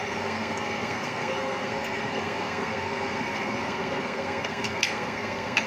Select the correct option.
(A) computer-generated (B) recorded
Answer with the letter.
A